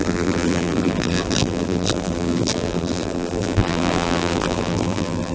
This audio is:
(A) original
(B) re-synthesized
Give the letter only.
B